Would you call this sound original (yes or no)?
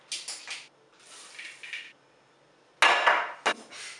yes